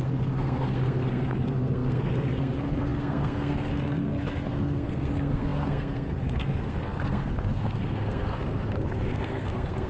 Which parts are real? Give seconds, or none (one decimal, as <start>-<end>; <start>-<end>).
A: none